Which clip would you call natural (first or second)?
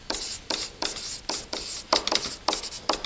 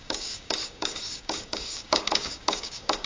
first